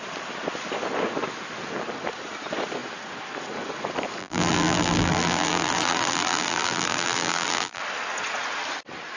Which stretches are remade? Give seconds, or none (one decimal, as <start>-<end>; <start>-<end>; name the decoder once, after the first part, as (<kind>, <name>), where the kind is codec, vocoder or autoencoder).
4.2-7.8 (vocoder, BigVGAN v2)